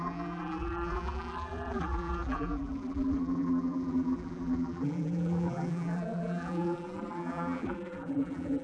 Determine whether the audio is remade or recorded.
remade